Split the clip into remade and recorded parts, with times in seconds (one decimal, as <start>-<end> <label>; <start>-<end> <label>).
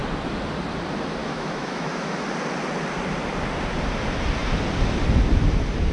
0.0-1.2 recorded; 1.2-2.2 remade; 2.2-5.9 recorded